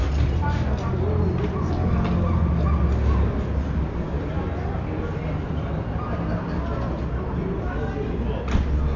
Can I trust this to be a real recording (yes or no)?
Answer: yes